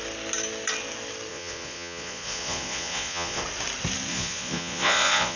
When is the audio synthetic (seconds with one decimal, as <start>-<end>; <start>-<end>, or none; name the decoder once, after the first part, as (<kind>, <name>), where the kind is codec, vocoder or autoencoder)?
1.3-3.4 (vocoder, Vocos); 4.1-5.4